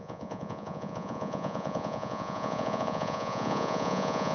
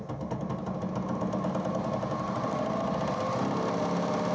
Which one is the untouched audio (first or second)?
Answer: second